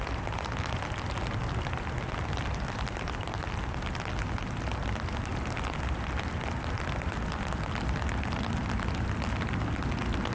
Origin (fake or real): real